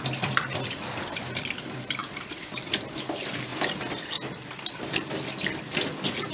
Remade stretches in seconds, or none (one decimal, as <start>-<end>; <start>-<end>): 0.0-6.3